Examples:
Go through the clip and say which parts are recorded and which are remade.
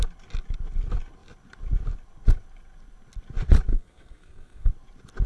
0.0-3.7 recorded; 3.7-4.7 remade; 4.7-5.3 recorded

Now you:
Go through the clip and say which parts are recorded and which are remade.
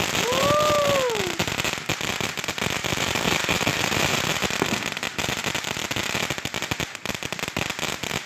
0.0-2.8 recorded; 2.8-4.0 remade; 4.0-8.3 recorded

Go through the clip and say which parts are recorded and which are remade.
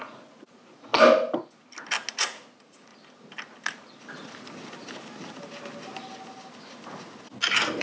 0.0-0.9 remade; 0.9-2.1 recorded; 2.1-2.9 remade; 2.9-7.8 recorded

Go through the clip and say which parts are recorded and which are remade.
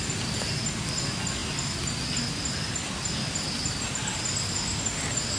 0.0-5.4 recorded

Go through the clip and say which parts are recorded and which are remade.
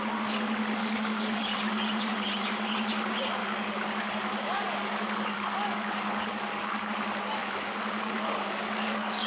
0.0-0.8 recorded; 0.8-1.6 remade; 1.6-3.4 recorded; 3.4-6.9 remade; 6.9-7.4 recorded; 7.4-9.3 remade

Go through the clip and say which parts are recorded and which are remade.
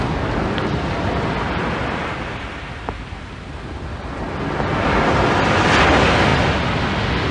0.0-7.3 recorded